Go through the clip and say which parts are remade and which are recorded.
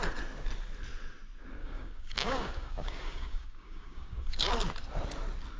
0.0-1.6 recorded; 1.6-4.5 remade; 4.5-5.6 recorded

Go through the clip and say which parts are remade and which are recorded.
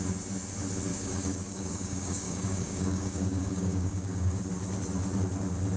0.0-0.9 recorded; 0.9-4.4 remade; 4.4-5.8 recorded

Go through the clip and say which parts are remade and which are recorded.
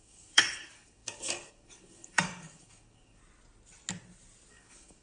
0.0-3.2 remade; 3.2-4.5 recorded; 4.5-5.0 remade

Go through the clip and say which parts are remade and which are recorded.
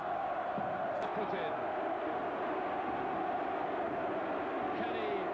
0.0-5.3 recorded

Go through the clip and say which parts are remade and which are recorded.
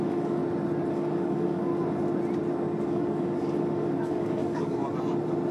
0.0-0.4 remade; 0.4-0.9 recorded; 0.9-1.7 remade; 1.7-2.8 recorded; 2.8-4.8 remade; 4.8-5.5 recorded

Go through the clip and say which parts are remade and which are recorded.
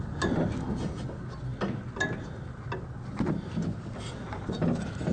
0.0-5.1 recorded